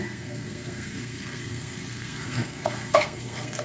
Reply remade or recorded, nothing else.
remade